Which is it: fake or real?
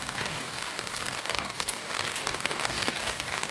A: fake